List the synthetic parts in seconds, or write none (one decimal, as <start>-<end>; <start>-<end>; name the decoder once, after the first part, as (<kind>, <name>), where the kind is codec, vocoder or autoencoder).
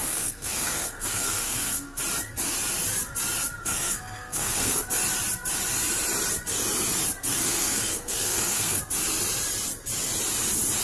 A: 0.0-2.0 (codec, SNAC); 3.6-4.9; 7.3-8.8